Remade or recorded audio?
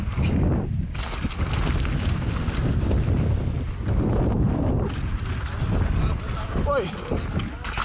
recorded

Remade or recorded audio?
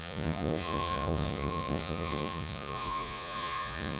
remade